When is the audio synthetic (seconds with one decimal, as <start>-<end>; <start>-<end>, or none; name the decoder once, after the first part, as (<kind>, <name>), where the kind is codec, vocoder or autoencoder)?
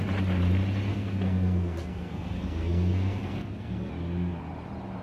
0.9-3.9 (codec, SNAC)